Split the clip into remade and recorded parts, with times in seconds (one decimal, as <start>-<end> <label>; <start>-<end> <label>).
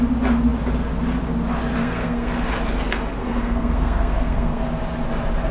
0.0-1.8 recorded; 1.8-2.3 remade; 2.3-3.2 recorded; 3.2-4.6 remade; 4.6-5.5 recorded